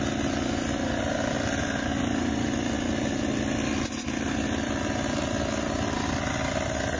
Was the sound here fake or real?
real